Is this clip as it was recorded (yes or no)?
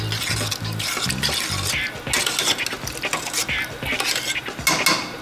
yes